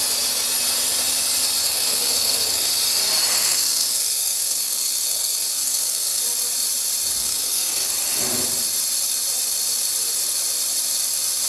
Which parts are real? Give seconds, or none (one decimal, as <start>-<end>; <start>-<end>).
0.0-1.6; 2.7-3.3; 6.2-7.2; 7.9-11.5